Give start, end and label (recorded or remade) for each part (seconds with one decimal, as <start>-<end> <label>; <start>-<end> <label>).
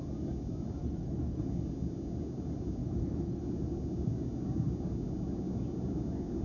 0.0-0.8 recorded; 0.8-1.4 remade; 1.4-2.8 recorded; 2.8-3.4 remade; 3.4-6.4 recorded